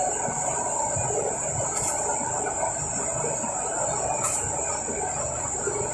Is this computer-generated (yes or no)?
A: no